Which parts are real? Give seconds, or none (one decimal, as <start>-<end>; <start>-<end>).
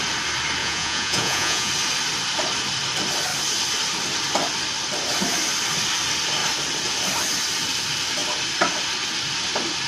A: 0.0-0.6; 1.7-9.9